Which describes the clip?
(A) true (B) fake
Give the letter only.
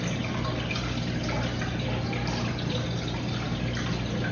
A